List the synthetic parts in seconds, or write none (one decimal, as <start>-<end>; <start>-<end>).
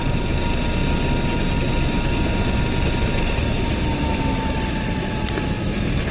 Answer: none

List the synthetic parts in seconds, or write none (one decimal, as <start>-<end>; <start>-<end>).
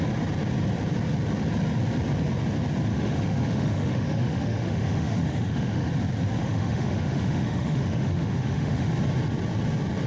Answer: 2.9-5.9; 6.4-8.9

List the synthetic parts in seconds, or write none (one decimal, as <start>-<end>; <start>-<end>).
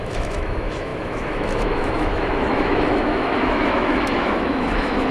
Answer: 0.0-5.1